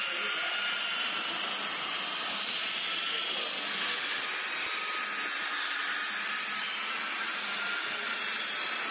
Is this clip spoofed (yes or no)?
no